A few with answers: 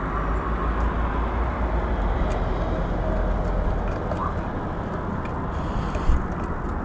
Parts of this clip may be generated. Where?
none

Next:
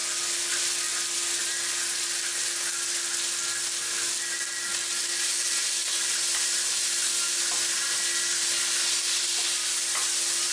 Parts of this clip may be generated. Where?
none

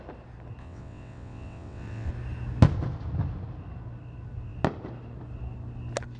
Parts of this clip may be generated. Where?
0.6-2.1 (vocoder, WaveNeXt)

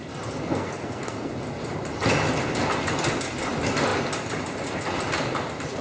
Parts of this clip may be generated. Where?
0.5-1.3 (codec, SNAC)

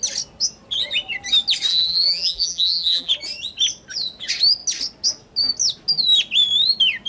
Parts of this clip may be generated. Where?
1.7-3.1 (vocoder, BigVGAN v2)

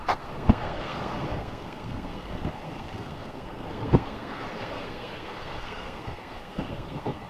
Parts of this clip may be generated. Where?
0.0-7.3 (codec, SNAC)